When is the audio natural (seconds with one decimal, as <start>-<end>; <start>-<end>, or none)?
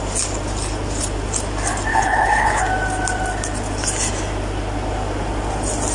0.0-1.9; 2.6-5.9